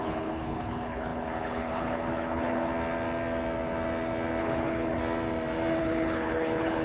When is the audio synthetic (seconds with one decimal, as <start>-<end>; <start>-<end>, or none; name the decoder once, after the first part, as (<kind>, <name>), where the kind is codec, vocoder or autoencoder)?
0.0-2.7 (codec, HILCodec); 4.4-5.0; 5.8-6.8